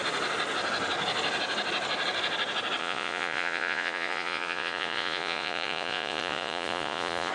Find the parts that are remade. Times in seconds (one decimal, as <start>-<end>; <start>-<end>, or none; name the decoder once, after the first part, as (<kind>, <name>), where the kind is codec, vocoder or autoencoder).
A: 2.8-7.3 (vocoder, Vocos)